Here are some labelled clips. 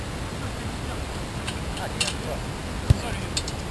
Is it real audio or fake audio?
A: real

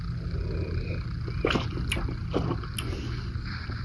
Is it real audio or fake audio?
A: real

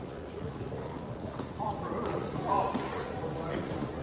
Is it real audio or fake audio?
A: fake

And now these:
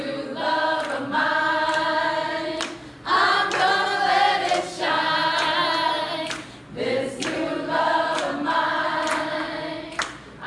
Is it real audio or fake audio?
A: real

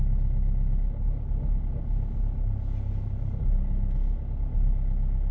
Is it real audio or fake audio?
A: real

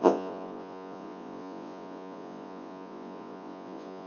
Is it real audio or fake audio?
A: fake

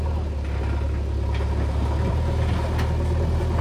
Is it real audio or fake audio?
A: real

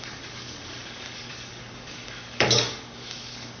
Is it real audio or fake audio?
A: fake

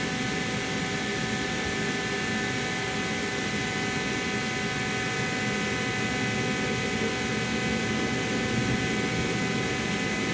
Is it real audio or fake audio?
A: real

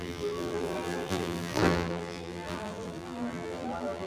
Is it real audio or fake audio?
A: fake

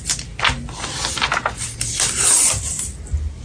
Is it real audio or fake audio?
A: real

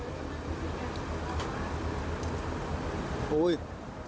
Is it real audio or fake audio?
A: real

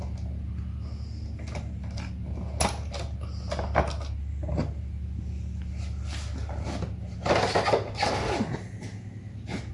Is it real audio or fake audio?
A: real